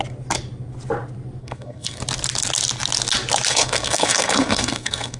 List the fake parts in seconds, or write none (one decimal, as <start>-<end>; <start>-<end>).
1.4-2.0; 3.5-5.2